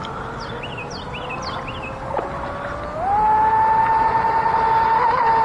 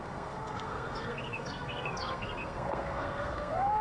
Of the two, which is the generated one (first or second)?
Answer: second